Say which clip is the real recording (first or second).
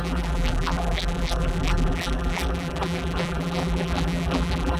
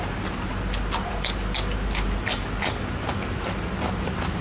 second